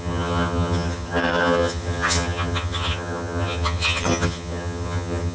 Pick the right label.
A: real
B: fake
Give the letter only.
B